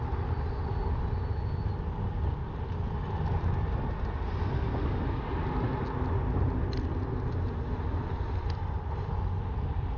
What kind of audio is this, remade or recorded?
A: recorded